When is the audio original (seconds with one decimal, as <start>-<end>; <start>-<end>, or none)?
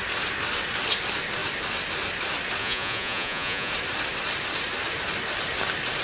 0.0-2.6; 3.7-6.0